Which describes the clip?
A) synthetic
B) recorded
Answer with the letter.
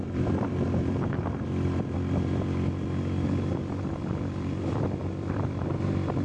A